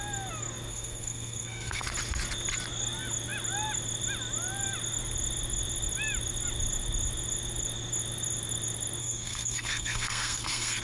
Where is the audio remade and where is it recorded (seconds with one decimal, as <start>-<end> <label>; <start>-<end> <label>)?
0.0-0.7 recorded; 0.7-1.8 remade; 1.8-9.0 recorded; 9.0-10.8 remade